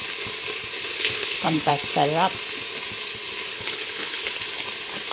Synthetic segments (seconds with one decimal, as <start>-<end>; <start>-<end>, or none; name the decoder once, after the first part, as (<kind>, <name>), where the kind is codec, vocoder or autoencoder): 0.9-1.7 (codec, HILCodec); 3.5-4.3